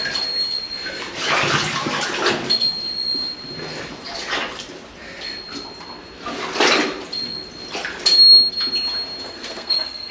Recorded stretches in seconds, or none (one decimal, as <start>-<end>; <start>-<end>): 0.0-9.3